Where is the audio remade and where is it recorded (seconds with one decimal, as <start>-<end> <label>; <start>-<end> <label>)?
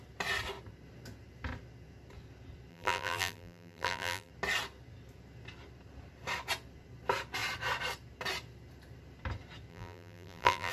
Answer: 0.0-2.7 recorded; 2.7-4.3 remade; 4.3-9.7 recorded; 9.7-10.7 remade